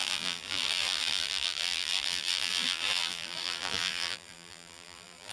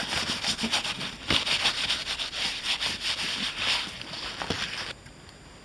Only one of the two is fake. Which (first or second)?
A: first